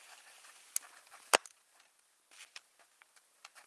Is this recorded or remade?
recorded